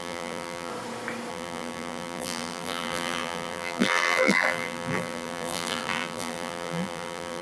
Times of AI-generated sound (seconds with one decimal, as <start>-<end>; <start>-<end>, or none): 0.0-0.7; 1.3-7.4

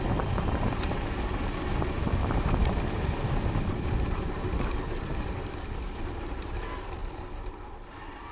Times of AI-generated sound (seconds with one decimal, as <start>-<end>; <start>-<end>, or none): 2.2-5.3; 7.0-8.3

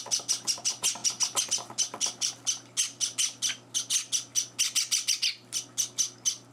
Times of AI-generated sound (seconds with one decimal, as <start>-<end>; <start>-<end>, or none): none

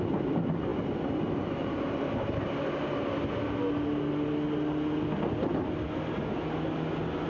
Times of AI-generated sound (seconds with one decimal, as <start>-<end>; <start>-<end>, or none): 0.7-2.7

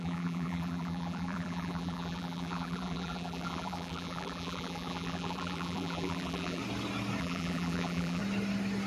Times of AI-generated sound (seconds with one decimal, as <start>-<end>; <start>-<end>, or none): 0.0-6.6; 7.2-8.2